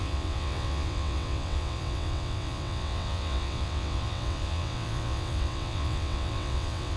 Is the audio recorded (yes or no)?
no